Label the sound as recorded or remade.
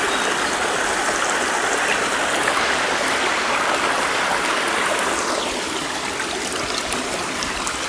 recorded